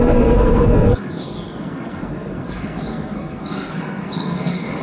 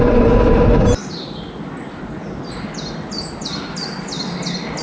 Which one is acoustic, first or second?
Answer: second